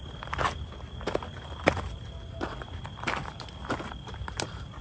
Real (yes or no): yes